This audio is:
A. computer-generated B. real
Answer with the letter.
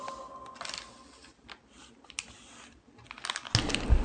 B